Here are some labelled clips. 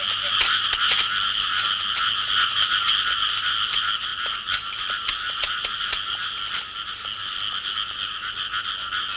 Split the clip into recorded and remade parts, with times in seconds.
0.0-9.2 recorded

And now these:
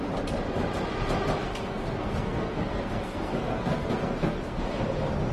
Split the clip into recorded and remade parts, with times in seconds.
0.0-1.4 recorded; 1.4-4.6 remade; 4.6-5.3 recorded

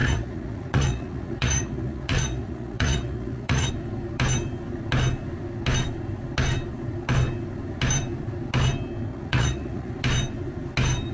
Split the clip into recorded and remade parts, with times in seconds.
0.0-3.7 remade; 3.7-9.1 recorded; 9.1-9.9 remade; 9.9-11.1 recorded

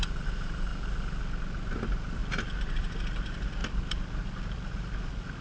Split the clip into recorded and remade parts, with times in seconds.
0.0-0.7 remade; 0.7-1.4 recorded; 1.4-2.2 remade; 2.2-2.7 recorded; 2.7-3.6 remade; 3.6-5.4 recorded